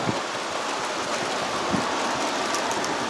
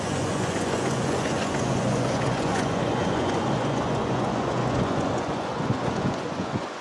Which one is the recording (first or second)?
first